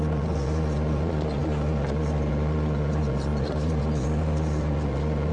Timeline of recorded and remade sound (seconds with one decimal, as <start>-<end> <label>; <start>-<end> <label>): 0.0-5.3 remade